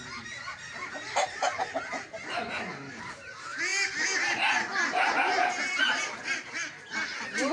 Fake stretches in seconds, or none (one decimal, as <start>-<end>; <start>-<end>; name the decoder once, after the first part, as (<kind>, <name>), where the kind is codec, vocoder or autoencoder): none